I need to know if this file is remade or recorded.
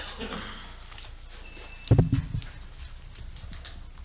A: recorded